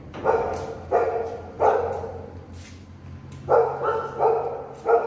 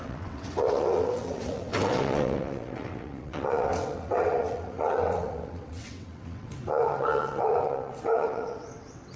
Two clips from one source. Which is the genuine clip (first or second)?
first